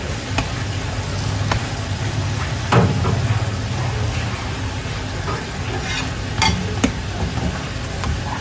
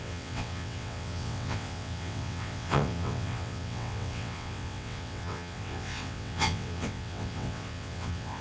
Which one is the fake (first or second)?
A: second